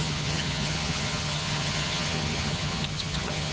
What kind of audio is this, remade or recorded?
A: remade